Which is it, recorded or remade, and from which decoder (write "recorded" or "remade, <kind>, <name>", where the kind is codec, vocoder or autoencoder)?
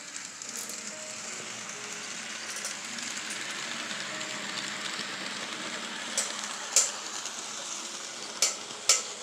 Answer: recorded